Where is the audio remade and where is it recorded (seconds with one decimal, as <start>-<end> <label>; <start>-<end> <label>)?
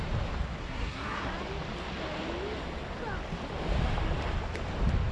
0.0-0.6 recorded; 0.6-1.3 remade; 1.3-5.1 recorded